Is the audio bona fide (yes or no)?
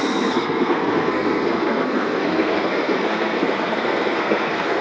no